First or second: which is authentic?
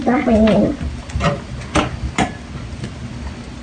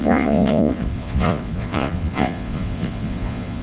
first